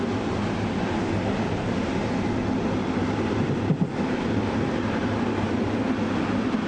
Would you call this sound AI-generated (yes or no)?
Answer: no